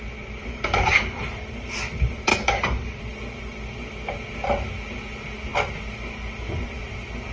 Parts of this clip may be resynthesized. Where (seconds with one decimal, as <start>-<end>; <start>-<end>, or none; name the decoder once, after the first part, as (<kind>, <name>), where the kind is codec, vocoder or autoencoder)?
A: 0.5-1.2 (codec, DAC); 2.3-3.0